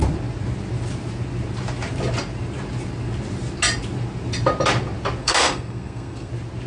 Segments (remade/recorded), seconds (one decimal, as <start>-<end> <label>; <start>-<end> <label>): 0.0-5.2 recorded; 5.2-6.3 remade; 6.3-6.7 recorded

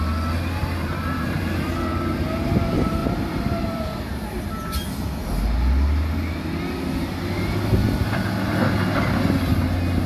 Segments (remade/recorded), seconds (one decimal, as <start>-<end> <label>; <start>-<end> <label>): 0.0-0.6 recorded; 0.6-1.6 remade; 1.6-3.0 recorded; 3.0-4.4 remade; 4.4-10.1 recorded